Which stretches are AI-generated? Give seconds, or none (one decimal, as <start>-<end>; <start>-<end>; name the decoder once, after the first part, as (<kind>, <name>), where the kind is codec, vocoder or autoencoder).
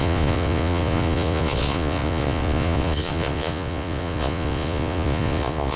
0.0-5.8 (vocoder, Vocos)